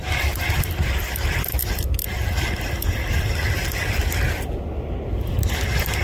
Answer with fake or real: real